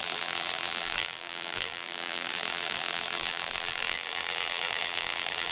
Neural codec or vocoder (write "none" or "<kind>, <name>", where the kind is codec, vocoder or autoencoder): vocoder, BigVGAN v2